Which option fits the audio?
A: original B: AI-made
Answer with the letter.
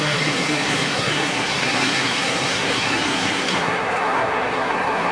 B